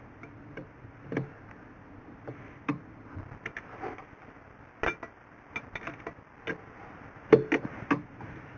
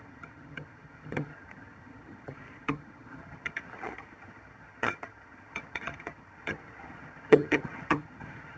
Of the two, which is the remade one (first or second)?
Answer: second